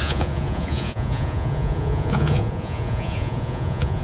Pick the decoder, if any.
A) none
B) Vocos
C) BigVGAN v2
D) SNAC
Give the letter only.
B